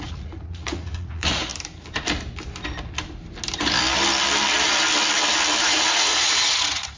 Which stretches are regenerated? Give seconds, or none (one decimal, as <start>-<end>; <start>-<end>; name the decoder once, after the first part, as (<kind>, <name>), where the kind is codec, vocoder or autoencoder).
0.0-1.5 (vocoder, Vocos); 5.6-7.0